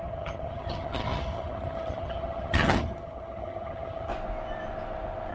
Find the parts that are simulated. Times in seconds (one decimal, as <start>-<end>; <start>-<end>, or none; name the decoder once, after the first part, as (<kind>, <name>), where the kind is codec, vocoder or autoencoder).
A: 0.0-4.1 (vocoder, HiFi-GAN)

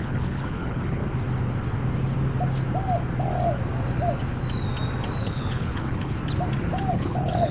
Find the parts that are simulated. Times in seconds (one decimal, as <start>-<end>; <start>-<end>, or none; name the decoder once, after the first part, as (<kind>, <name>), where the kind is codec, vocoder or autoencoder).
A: 0.0-1.0 (codec, HILCodec); 5.2-6.2; 6.9-7.5

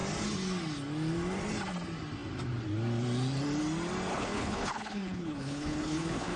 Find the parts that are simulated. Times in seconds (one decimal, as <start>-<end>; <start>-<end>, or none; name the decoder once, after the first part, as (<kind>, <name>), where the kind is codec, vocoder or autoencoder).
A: 4.1-6.4 (codec, HILCodec)